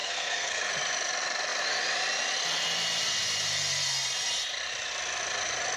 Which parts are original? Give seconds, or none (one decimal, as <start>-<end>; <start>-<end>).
0.7-5.8